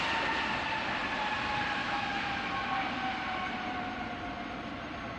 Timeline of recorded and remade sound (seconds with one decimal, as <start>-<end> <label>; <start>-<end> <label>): 0.0-1.8 recorded; 1.8-2.3 remade; 2.3-5.2 recorded